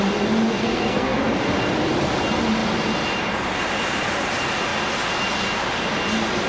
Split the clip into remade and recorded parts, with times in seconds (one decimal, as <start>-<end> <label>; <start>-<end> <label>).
0.0-0.6 recorded; 0.6-1.2 remade; 1.2-6.5 recorded